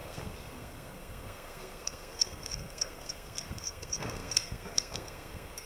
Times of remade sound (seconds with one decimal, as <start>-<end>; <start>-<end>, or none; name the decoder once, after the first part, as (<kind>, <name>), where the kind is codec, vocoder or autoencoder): 0.0-5.7 (codec, SNAC)